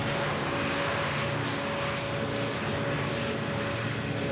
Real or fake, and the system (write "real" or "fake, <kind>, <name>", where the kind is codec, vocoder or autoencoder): real